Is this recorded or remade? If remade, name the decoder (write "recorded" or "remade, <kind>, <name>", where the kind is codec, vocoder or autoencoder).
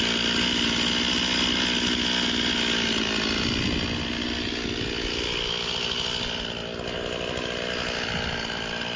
recorded